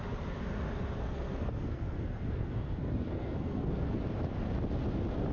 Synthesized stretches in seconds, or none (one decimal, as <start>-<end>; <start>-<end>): 1.0-4.0